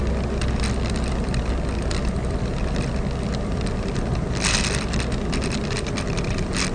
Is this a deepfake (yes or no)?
no